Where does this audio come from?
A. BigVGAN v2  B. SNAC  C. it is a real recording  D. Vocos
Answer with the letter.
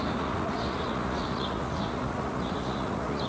D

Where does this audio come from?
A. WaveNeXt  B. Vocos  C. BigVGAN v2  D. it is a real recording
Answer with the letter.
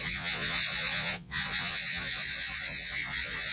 B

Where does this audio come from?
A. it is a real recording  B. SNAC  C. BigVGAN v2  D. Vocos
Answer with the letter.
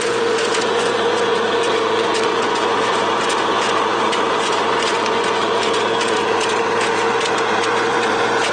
D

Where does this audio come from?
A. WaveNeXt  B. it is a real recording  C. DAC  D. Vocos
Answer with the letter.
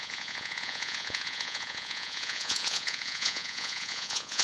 D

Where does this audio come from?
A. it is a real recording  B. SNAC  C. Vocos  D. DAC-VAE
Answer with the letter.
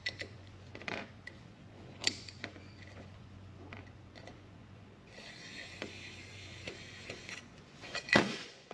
C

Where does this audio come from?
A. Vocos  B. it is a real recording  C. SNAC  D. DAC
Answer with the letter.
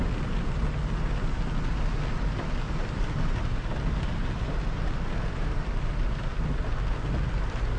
B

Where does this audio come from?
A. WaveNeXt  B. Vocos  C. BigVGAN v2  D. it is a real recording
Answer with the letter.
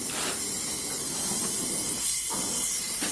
D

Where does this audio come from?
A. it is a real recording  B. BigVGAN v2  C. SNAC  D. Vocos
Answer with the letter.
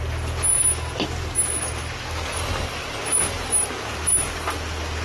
A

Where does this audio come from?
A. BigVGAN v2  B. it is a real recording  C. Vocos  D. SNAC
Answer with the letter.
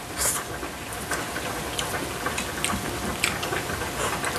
B